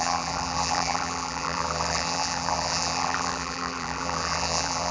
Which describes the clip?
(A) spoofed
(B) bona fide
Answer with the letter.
A